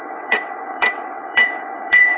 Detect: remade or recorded remade